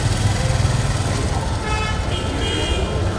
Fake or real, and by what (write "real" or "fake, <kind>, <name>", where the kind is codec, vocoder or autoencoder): real